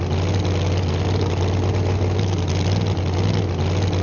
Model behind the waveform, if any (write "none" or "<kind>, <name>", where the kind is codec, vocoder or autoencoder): none